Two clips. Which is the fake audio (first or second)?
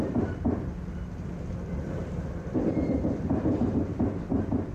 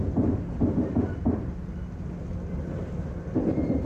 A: first